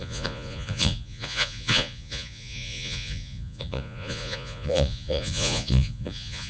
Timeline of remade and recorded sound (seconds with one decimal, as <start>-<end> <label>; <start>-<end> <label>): 0.0-6.5 remade